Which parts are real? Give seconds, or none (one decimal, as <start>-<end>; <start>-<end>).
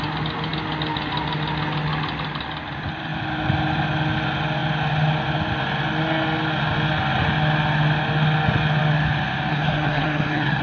0.0-9.5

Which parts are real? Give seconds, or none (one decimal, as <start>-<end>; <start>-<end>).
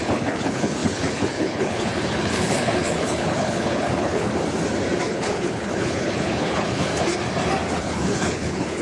4.3-5.1; 6.9-7.8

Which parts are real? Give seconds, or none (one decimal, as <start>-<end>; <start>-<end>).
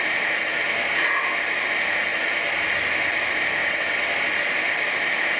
0.0-3.6; 4.1-5.4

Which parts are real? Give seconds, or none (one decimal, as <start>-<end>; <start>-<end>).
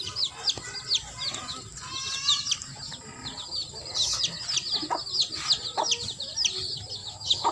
0.0-7.0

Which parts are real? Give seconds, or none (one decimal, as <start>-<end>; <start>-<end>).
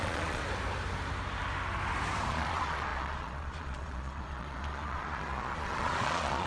0.4-2.3